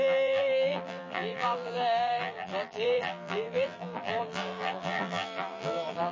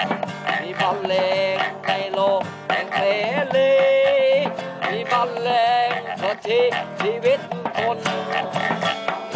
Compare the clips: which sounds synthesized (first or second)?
first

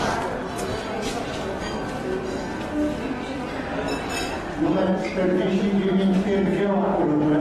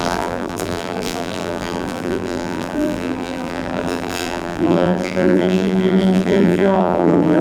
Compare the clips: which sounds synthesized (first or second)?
second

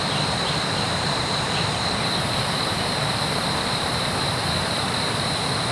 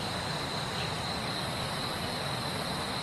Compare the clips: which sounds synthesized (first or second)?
first